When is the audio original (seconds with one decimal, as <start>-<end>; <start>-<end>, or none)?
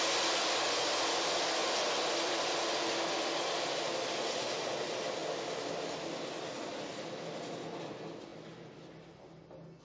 0.0-9.8